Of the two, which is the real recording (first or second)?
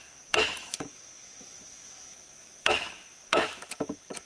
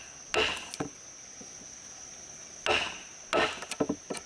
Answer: second